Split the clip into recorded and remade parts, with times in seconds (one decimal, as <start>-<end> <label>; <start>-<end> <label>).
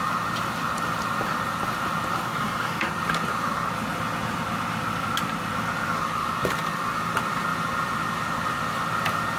0.0-2.3 recorded; 2.3-2.9 remade; 2.9-9.4 recorded